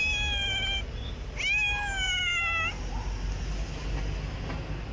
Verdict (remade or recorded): recorded